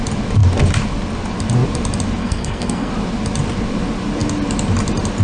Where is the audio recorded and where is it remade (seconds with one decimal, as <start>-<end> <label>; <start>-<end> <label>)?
0.0-2.2 recorded; 2.2-2.9 remade; 2.9-5.2 recorded

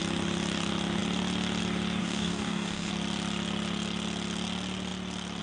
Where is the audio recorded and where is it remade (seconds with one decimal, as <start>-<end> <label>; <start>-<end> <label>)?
0.0-2.0 recorded; 2.0-2.9 remade; 2.9-5.4 recorded

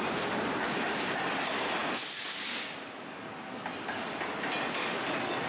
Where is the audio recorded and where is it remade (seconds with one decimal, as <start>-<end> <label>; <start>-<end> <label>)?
0.0-5.5 recorded

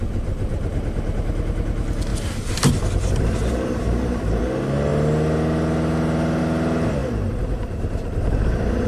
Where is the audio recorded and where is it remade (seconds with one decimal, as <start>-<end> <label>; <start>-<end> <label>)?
0.0-2.1 recorded; 2.1-4.4 remade; 4.4-8.9 recorded

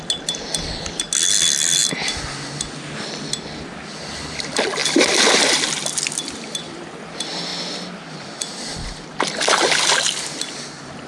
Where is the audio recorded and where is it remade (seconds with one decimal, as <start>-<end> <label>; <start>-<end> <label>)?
0.0-11.1 recorded

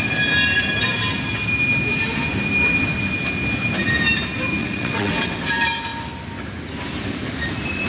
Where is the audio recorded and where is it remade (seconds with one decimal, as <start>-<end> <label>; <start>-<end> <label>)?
0.0-4.6 recorded; 4.6-5.4 remade; 5.4-7.9 recorded